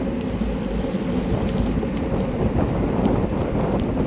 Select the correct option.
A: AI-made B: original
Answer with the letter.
B